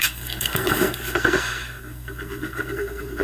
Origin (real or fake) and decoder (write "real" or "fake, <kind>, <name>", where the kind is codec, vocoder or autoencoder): fake, codec, SNAC